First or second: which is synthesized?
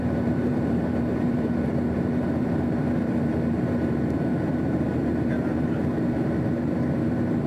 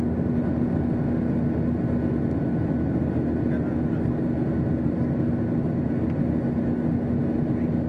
first